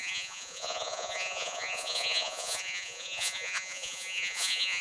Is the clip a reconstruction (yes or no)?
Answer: yes